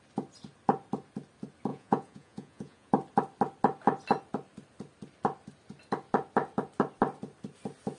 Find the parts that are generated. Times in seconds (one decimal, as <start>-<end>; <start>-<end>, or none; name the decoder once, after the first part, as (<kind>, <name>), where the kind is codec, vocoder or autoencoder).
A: 1.7-2.9 (vocoder, Vocos)